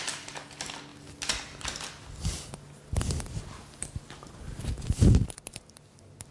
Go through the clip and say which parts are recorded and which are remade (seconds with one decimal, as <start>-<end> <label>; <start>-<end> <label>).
0.0-6.3 recorded